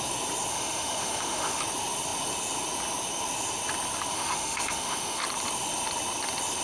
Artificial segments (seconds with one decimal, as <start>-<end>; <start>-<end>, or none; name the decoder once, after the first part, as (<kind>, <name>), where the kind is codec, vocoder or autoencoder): 0.5-1.6 (autoencoder, DAC-VAE); 4.1-5.2